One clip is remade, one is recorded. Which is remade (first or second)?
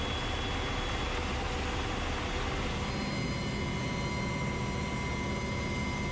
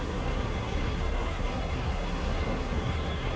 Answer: second